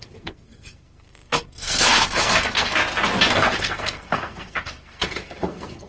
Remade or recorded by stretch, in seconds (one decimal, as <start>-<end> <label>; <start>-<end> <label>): 0.0-2.8 remade; 2.8-3.3 recorded; 3.3-5.9 remade